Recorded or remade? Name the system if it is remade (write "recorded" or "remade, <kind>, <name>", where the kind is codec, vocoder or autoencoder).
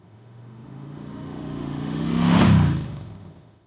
remade, autoencoder, DAC-VAE